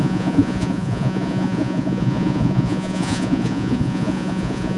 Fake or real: fake